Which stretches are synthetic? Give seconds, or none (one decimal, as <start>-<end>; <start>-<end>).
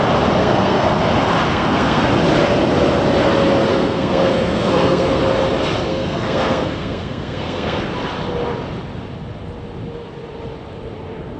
0.4-0.9; 1.5-2.1; 3.7-5.2; 5.9-7.8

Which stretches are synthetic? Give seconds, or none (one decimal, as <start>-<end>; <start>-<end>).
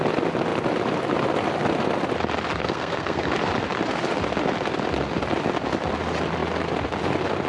2.6-3.3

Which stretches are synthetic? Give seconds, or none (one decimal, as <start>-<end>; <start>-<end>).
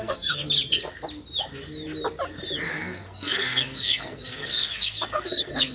0.0-0.4; 2.7-5.7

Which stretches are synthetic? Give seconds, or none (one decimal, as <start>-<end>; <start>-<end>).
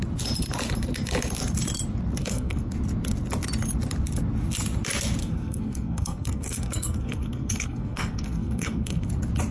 2.2-2.7; 5.2-9.1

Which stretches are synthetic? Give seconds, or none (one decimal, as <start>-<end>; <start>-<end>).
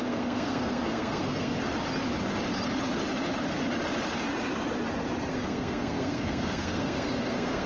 0.0-1.7; 5.3-7.7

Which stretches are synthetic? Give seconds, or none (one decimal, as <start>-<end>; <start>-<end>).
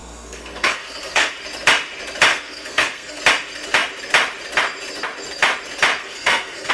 0.0-1.3; 2.3-3.2; 6.0-6.7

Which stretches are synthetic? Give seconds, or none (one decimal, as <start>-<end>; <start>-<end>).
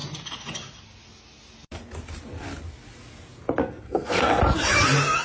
3.6-4.4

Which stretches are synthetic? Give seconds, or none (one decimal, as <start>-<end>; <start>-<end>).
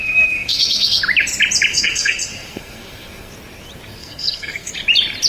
0.0-1.0; 1.7-3.3; 4.0-4.7